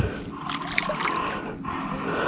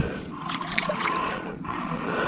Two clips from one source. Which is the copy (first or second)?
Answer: second